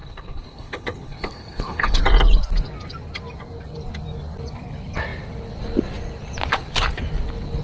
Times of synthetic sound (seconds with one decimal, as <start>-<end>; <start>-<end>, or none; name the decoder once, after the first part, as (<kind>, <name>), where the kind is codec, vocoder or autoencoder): 0.0-2.0 (codec, HILCodec)